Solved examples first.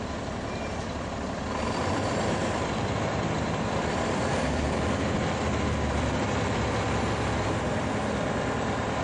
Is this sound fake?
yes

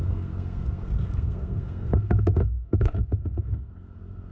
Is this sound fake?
yes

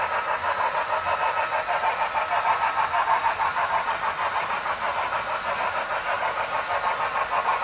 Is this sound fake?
no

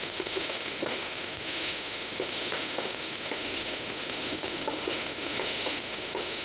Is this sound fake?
yes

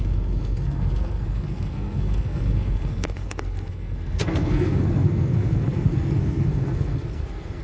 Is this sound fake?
yes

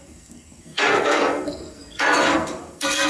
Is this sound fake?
yes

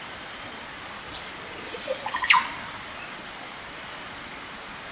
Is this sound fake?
no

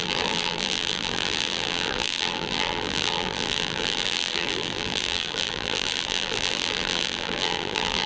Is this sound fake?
yes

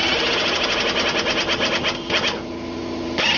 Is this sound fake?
no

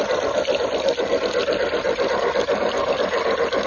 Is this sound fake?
no